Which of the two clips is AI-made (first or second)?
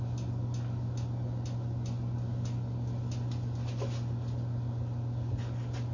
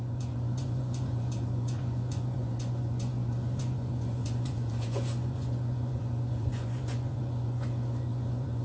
second